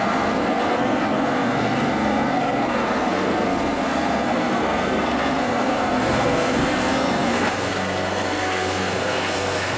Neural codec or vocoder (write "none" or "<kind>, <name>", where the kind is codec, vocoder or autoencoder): codec, SNAC